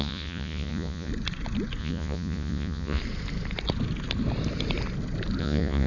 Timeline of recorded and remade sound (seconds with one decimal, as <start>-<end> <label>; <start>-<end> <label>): 0.0-1.1 remade; 1.1-1.8 recorded; 1.8-3.0 remade; 3.0-5.4 recorded; 5.4-5.9 remade